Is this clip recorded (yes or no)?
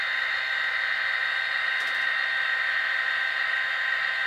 yes